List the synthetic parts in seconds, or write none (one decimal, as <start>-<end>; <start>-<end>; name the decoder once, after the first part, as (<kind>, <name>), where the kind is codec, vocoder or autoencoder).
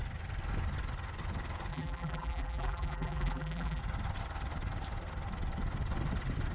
1.7-3.8 (vocoder, BigVGAN v2)